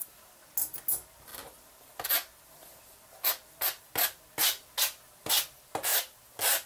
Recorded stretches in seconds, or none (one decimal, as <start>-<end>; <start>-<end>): 0.0-6.7

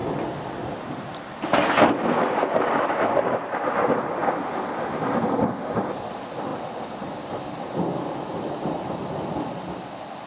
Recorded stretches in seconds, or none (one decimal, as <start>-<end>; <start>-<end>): 0.0-10.3

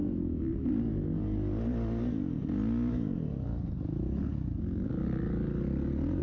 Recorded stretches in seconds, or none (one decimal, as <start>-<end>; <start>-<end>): 0.7-6.2

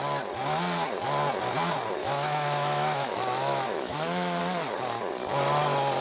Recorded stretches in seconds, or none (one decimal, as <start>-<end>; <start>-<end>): 0.0-2.0; 4.4-6.0